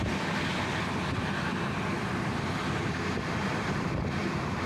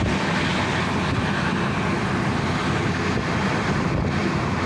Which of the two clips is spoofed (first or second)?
first